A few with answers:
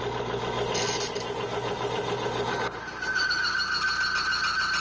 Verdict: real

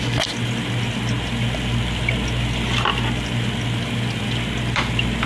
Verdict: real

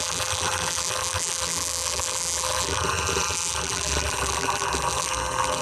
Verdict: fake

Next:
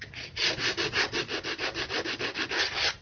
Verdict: real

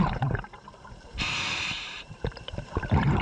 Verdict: fake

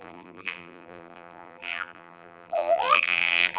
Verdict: fake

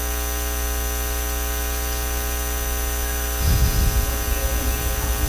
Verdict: real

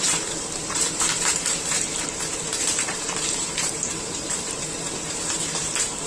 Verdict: fake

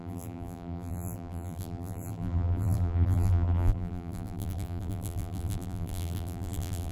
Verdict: fake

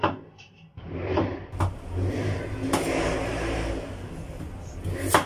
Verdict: real